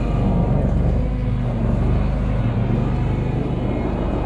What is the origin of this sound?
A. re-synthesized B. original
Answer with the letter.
B